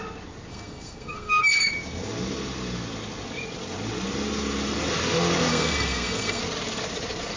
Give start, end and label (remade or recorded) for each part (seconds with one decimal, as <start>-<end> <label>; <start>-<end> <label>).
0.0-0.5 recorded; 0.5-1.4 remade; 1.4-5.5 recorded; 5.5-6.4 remade; 6.4-7.4 recorded

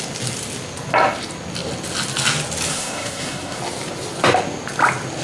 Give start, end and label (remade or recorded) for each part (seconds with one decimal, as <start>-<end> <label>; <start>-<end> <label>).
0.0-2.7 recorded; 2.7-3.6 remade; 3.6-5.2 recorded

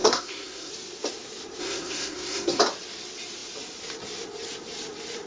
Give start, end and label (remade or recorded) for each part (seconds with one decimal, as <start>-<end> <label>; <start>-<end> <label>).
0.0-0.7 remade; 0.7-1.6 recorded; 1.6-2.6 remade; 2.6-5.3 recorded

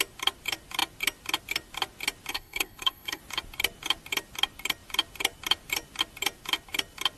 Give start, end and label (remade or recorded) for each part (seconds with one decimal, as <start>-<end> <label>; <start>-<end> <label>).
0.0-2.3 recorded; 2.3-3.2 remade; 3.2-7.2 recorded

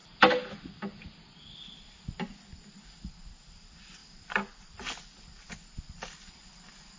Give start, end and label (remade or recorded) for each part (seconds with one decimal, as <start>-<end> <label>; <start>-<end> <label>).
0.0-7.0 recorded

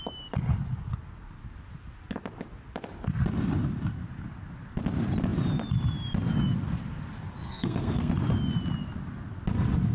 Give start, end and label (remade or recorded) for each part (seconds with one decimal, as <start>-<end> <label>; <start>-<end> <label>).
0.0-7.4 recorded; 7.4-8.1 remade; 8.1-9.9 recorded

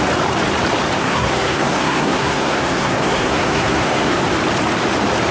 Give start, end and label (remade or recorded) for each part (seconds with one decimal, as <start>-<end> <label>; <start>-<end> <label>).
0.0-1.0 recorded; 1.0-4.2 remade; 4.2-5.3 recorded